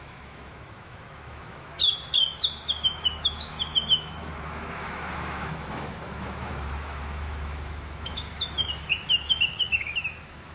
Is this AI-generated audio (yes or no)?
yes